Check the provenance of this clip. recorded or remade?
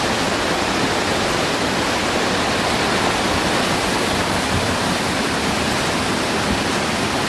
recorded